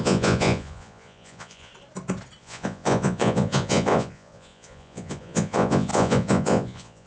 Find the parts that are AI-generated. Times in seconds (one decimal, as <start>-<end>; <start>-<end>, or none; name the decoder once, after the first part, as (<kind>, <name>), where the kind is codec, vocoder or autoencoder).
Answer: 0.0-1.7 (vocoder, Vocos); 2.4-7.1